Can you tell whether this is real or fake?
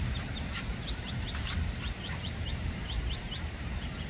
fake